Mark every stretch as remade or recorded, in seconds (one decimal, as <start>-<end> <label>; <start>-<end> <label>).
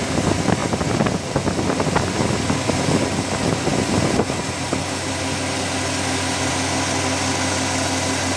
0.0-8.4 recorded